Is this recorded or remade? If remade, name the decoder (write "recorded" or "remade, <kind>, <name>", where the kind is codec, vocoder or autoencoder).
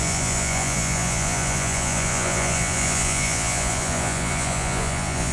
remade, vocoder, Vocos